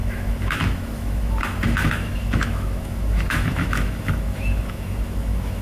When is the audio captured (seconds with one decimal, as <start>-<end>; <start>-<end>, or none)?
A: none